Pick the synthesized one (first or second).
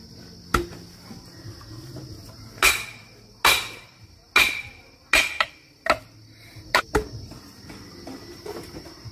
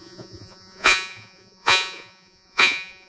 second